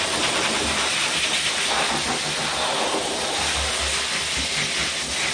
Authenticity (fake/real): real